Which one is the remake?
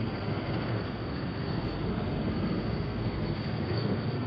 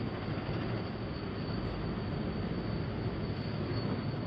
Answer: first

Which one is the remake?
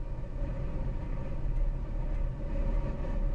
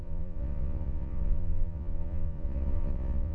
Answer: second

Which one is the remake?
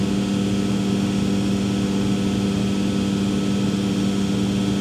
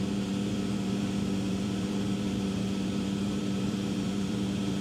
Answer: second